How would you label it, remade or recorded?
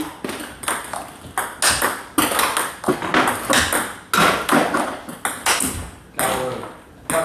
recorded